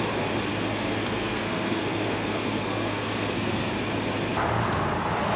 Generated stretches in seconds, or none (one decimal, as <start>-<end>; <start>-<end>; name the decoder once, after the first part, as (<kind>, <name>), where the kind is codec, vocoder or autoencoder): 0.5-3.7 (codec, SNAC)